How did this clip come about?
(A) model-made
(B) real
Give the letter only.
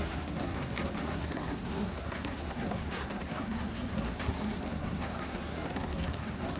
A